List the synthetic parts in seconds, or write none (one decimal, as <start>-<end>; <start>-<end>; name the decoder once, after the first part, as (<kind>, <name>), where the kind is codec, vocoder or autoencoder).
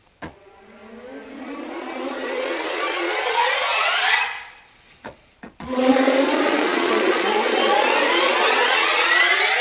0.0-0.8 (vocoder, Vocos); 1.4-9.6